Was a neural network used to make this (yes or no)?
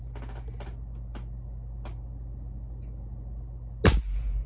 no